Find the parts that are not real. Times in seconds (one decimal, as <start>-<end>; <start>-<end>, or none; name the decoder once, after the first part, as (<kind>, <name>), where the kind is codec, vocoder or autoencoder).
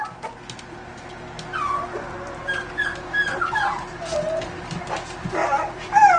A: 3.3-3.9 (vocoder, BigVGAN v2); 5.4-6.2